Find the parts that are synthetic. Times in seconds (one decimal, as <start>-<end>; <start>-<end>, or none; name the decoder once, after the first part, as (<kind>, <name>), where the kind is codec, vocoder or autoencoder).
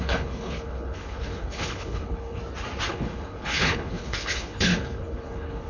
0.0-2.4 (codec, HILCodec); 2.9-5.7